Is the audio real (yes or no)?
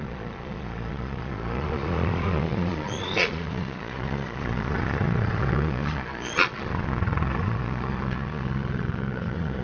no